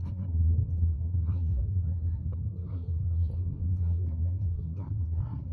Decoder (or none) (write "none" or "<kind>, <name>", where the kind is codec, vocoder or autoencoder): codec, SNAC